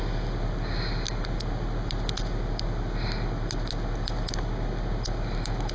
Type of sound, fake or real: real